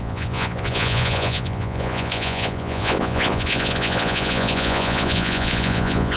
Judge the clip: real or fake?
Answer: fake